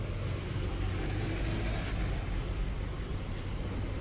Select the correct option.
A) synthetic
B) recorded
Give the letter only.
B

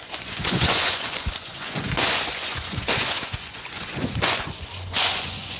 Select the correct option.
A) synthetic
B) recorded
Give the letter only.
A